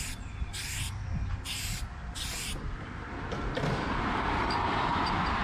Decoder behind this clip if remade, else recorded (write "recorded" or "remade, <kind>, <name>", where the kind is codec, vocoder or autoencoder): remade, vocoder, BigVGAN v2